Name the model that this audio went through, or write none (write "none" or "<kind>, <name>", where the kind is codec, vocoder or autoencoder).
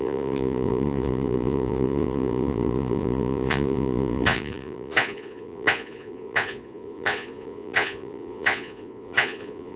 vocoder, Vocos